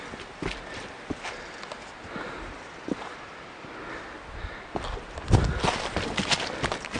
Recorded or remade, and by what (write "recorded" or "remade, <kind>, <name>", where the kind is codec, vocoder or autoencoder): recorded